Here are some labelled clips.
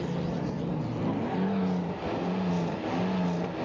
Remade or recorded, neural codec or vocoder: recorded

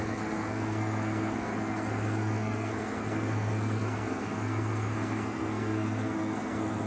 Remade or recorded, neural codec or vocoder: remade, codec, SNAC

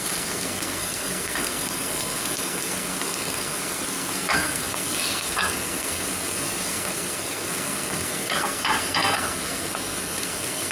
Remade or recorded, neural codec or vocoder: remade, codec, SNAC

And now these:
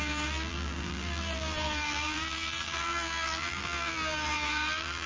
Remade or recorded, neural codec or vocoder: remade, vocoder, BigVGAN v2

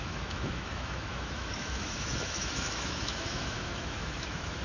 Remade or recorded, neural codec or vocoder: remade, autoencoder, DAC-VAE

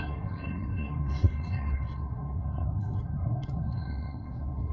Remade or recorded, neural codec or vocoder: remade, codec, SNAC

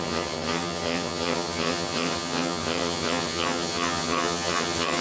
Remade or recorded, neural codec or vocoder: remade, vocoder, HiFi-GAN